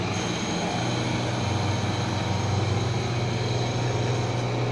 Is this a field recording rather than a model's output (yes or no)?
yes